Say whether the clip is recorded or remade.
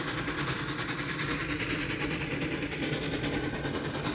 recorded